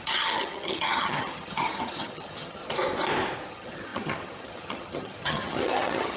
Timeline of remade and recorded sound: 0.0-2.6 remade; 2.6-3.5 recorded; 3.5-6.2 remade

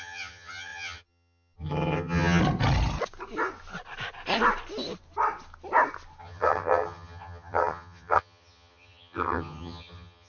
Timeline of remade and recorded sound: 0.0-2.4 remade; 2.4-6.2 recorded; 6.2-10.3 remade

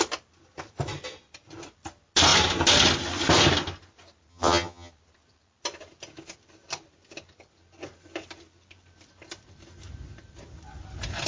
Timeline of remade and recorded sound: 0.0-4.3 recorded; 4.3-4.9 remade; 4.9-11.3 recorded

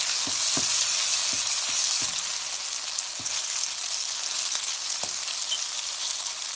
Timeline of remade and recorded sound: 0.0-6.6 recorded

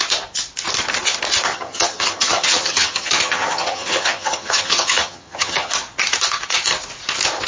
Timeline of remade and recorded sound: 0.0-1.5 recorded; 1.5-5.7 remade; 5.7-7.5 recorded